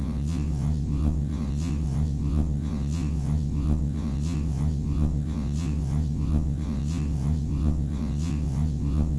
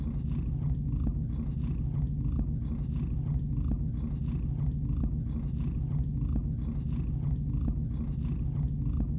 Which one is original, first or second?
second